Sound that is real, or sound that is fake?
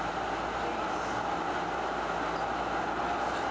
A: real